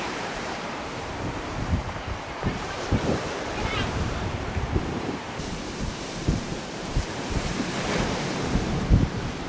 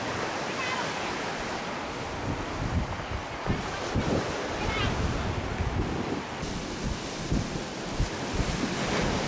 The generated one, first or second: first